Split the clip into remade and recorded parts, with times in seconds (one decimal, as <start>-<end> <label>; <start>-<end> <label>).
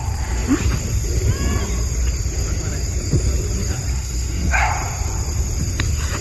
0.0-3.9 recorded; 3.9-4.7 remade; 4.7-6.2 recorded